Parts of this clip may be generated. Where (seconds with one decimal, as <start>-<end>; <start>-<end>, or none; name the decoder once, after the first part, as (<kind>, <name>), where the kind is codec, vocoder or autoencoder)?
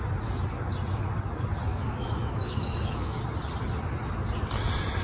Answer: 1.7-3.2 (autoencoder, DAC-VAE)